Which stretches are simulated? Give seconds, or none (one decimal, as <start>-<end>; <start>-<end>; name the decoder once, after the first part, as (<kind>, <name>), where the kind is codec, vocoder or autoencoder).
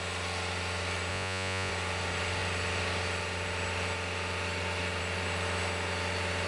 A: 1.1-1.7 (vocoder, Vocos)